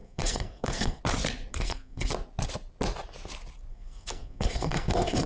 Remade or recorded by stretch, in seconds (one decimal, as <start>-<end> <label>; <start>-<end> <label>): 0.0-1.0 remade; 1.0-1.5 recorded; 1.5-2.1 remade; 2.1-3.7 recorded; 3.7-5.3 remade